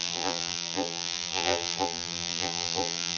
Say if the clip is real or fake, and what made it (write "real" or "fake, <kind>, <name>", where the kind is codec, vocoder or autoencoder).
fake, vocoder, BigVGAN v2